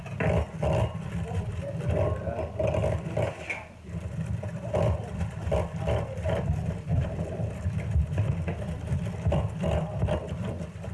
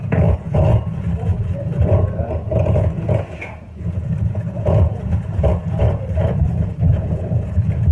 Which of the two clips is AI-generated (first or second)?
second